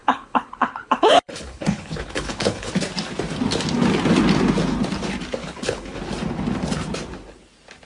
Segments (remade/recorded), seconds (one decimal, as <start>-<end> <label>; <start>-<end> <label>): 0.0-2.7 remade; 2.7-5.4 recorded; 5.4-6.0 remade; 6.0-7.9 recorded